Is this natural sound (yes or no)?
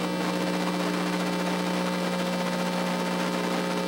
yes